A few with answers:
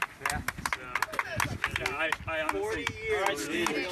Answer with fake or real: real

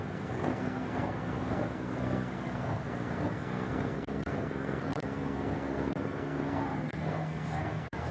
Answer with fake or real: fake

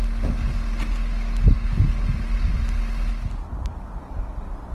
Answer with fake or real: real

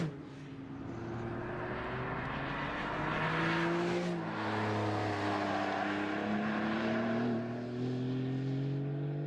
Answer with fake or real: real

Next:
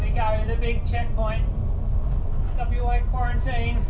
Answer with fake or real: real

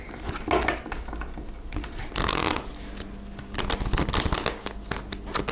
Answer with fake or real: real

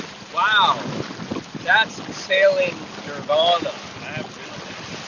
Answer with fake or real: real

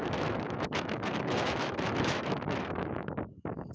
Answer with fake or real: fake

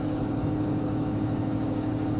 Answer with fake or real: fake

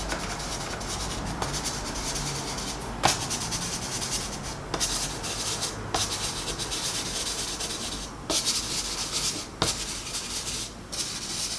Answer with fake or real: real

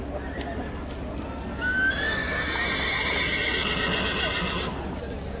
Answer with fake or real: real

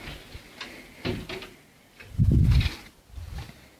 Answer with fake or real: real